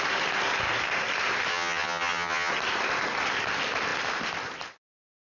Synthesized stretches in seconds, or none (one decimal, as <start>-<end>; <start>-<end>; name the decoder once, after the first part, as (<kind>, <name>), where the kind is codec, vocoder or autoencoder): 1.5-2.5 (vocoder, HiFi-GAN)